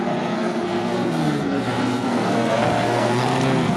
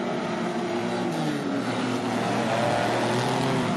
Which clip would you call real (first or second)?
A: second